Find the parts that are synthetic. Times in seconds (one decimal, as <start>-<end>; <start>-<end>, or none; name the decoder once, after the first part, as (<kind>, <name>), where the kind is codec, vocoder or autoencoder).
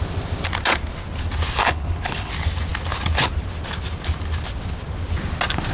1.6-2.3 (codec, HILCodec)